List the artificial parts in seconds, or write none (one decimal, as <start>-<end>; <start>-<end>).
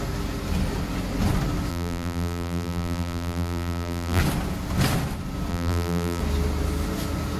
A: 1.7-4.2; 5.5-6.2